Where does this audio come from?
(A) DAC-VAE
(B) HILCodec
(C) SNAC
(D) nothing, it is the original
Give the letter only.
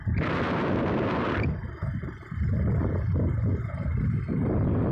D